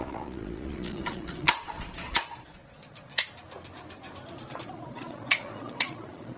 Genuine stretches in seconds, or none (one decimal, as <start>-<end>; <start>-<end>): 3.1-4.3

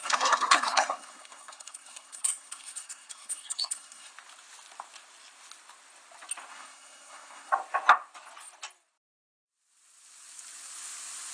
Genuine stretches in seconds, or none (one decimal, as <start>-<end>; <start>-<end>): 4.1-6.5; 7.5-11.3

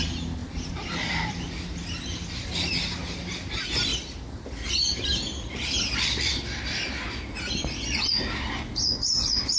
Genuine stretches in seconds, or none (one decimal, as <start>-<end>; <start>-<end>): 0.0-0.4; 1.4-6.3; 6.8-9.6